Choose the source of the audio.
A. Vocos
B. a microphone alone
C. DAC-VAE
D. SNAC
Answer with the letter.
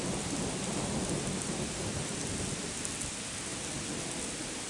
B